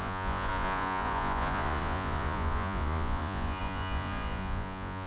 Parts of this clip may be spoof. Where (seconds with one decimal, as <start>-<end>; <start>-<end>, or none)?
0.0-5.1